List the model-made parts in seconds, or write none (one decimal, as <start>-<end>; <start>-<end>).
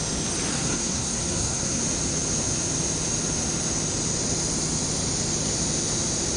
0.5-1.8